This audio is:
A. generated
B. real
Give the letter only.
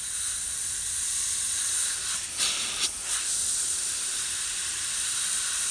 A